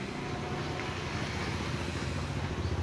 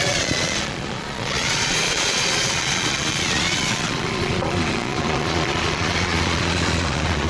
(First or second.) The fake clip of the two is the second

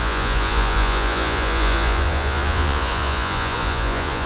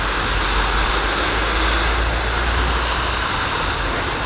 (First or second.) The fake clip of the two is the first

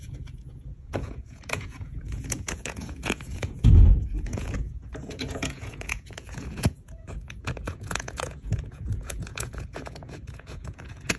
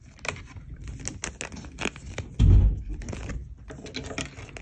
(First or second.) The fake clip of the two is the first